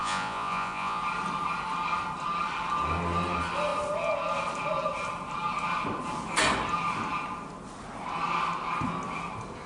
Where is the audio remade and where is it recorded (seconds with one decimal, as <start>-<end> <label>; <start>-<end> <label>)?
0.0-1.0 remade; 1.0-9.7 recorded